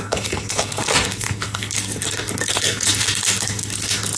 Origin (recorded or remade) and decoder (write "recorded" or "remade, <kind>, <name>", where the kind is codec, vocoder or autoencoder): remade, codec, SNAC